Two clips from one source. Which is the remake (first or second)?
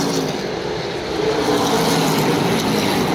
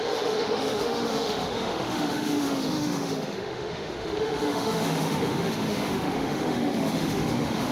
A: second